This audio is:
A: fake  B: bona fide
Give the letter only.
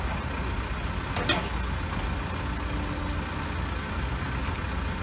B